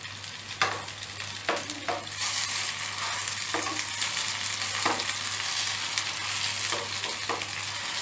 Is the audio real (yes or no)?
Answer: yes